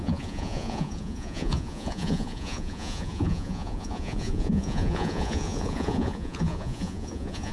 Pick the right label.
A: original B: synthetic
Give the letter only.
B